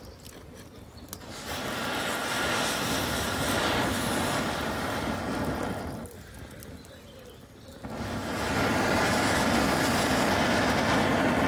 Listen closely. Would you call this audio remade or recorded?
recorded